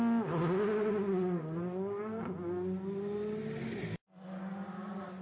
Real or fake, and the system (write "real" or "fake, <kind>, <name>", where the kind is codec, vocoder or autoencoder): real